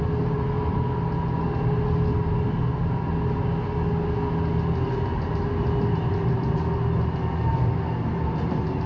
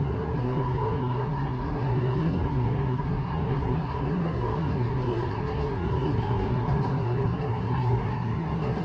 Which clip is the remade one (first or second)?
second